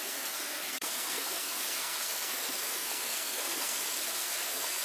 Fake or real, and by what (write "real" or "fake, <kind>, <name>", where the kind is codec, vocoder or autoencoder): fake, codec, SNAC